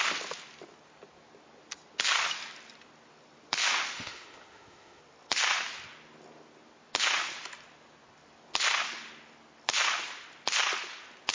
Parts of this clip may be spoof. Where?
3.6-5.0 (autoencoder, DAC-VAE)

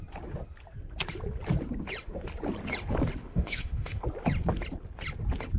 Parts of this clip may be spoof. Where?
3.2-4.0 (autoencoder, DAC-VAE)

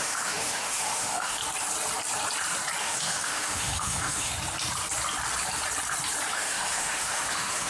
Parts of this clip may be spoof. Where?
0.0-1.4 (autoencoder, DAC-VAE); 2.8-4.3; 6.3-7.7

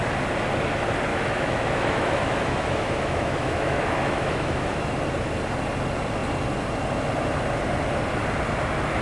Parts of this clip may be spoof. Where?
1.1-5.0 (autoencoder, DAC-VAE)

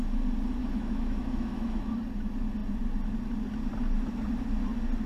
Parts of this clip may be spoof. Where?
0.6-1.9 (autoencoder, DAC-VAE)

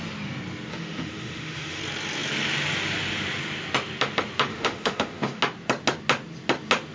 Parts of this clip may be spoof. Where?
0.7-1.8 (autoencoder, DAC-VAE); 4.5-5.4

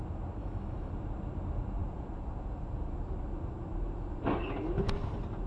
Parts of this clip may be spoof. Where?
0.4-0.9 (autoencoder, DAC-VAE)

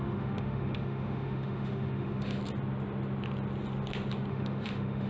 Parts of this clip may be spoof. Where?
0.0-2.4 (autoencoder, DAC-VAE); 4.3-5.1